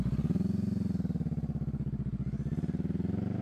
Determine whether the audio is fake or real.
real